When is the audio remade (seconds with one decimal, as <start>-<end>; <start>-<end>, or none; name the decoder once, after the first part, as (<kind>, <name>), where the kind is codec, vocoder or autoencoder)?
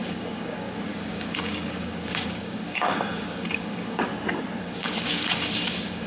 0.0-4.1 (codec, DAC); 4.6-6.1